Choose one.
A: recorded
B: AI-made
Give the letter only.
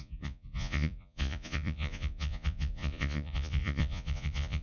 B